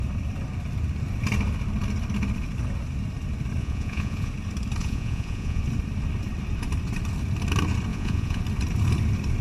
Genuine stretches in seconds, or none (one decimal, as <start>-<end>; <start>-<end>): 0.0-3.6; 4.3-4.8; 5.6-7.9; 8.4-9.4